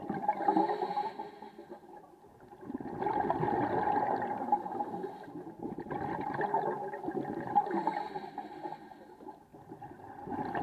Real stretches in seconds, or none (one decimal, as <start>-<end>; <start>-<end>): 0.0-10.6